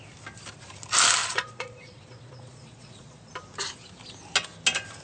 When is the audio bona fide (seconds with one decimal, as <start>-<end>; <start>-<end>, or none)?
0.0-1.2; 3.3-5.0

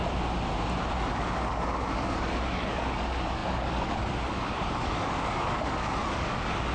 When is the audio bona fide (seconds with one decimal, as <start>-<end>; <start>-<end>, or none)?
0.0-1.1

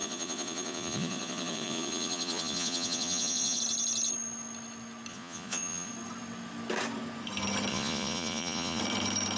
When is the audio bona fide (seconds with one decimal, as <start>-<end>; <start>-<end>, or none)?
3.6-5.1; 5.9-7.7; 8.8-9.4

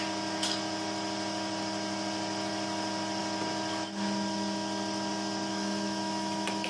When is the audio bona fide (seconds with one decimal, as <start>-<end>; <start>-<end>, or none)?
0.0-5.5

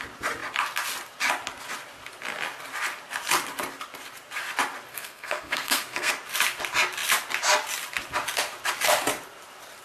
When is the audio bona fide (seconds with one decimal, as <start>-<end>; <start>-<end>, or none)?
0.0-4.9; 6.1-9.8

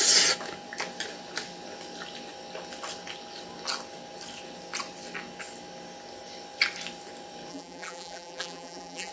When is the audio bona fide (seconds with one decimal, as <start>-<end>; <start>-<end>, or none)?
0.0-7.5

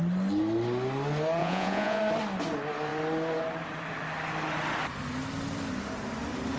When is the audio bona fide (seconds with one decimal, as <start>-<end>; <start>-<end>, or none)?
0.0-1.4; 2.0-6.6